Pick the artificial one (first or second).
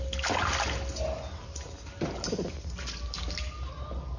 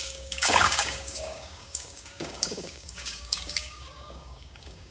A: second